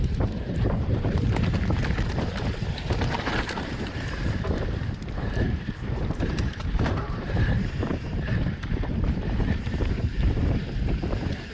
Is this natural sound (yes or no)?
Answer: no